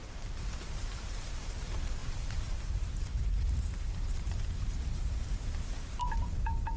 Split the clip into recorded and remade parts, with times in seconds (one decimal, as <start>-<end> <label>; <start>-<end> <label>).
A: 0.0-6.8 remade